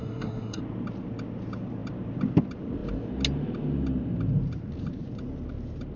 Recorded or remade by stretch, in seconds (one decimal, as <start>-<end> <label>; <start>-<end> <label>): 0.0-0.6 remade; 0.6-6.0 recorded